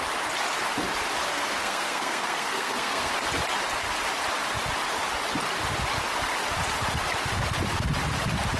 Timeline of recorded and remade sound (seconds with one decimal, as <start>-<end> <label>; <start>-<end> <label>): 0.0-1.3 recorded; 1.3-3.1 remade; 3.1-8.6 recorded